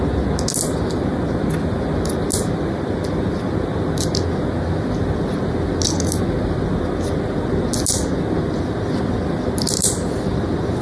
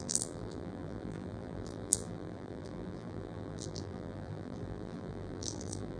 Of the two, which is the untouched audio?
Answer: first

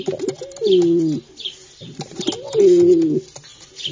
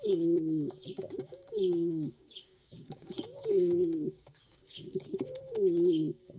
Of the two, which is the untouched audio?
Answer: first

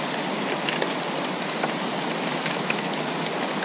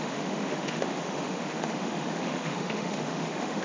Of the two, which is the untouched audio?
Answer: first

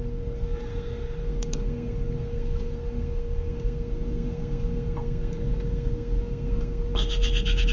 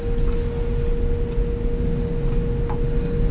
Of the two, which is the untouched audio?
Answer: second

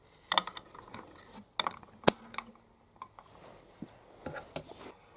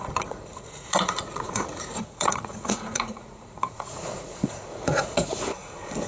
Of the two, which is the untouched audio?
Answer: first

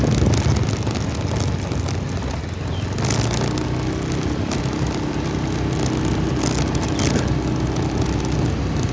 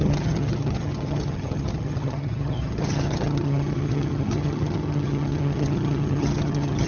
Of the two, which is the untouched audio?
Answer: first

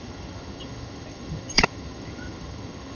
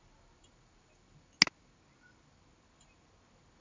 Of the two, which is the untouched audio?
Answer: second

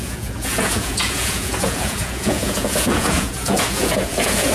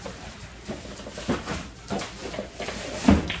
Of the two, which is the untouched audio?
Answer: second